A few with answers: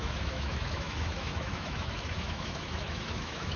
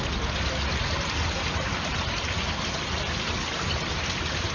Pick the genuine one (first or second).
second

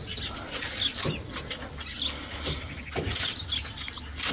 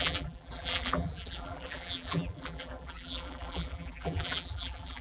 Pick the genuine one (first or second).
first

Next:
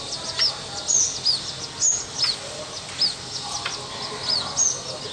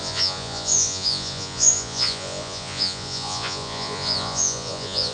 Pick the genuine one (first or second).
first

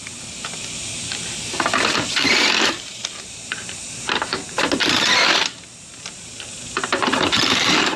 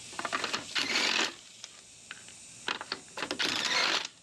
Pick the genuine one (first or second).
second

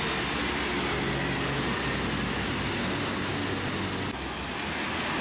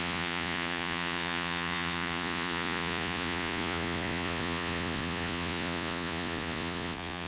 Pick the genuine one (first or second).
first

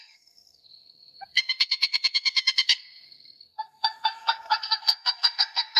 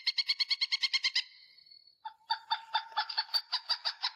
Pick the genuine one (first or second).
second